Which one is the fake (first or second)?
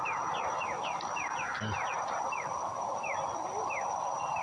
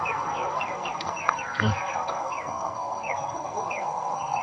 second